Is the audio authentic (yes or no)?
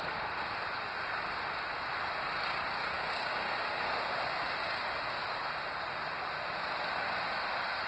yes